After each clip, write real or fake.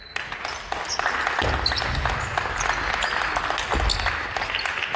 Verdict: real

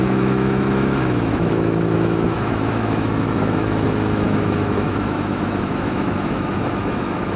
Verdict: fake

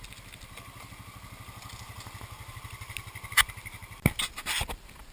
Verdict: real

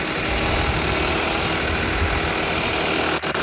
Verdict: real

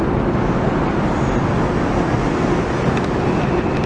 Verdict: real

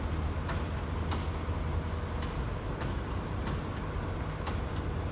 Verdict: real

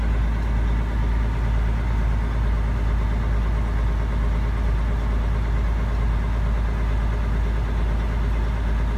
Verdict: real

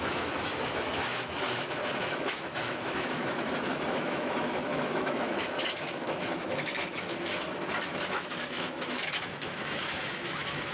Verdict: fake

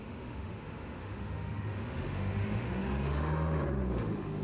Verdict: fake